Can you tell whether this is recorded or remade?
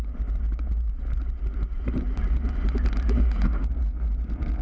recorded